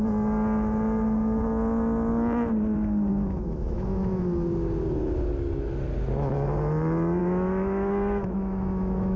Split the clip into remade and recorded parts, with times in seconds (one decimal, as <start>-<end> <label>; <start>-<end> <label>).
0.0-3.1 recorded; 3.1-4.2 remade; 4.2-7.2 recorded; 7.2-9.2 remade